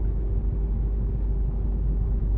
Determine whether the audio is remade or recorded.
recorded